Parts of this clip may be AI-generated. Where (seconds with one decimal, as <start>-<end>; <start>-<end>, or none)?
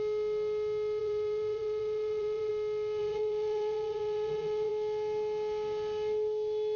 1.0-2.5; 3.0-4.7